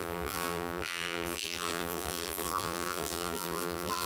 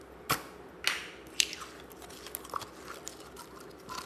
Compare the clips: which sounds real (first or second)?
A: second